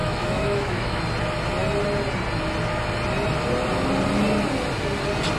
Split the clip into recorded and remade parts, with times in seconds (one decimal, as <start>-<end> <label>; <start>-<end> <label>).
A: 0.0-1.0 remade; 1.0-5.4 recorded